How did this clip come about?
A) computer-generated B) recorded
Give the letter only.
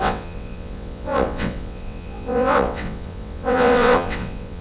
A